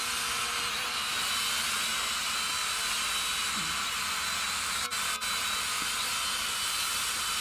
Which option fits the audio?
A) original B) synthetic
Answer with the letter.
A